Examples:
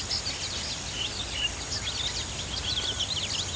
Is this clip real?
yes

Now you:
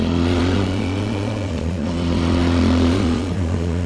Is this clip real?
no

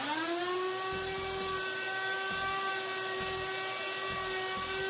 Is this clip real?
yes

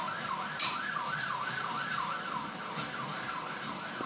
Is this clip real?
yes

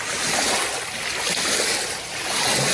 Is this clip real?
yes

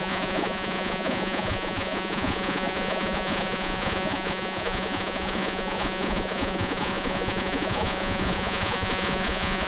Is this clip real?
no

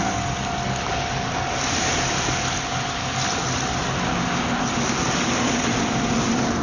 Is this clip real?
yes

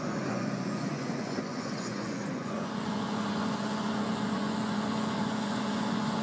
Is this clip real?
no